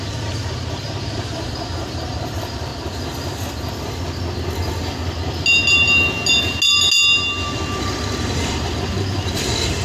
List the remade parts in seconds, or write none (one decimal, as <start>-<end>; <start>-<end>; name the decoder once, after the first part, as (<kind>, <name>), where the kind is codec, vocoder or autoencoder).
0.0-2.7 (vocoder, BigVGAN v2); 7.8-9.8